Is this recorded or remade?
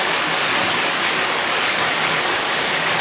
remade